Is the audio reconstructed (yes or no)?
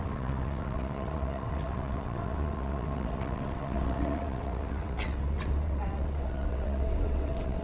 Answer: yes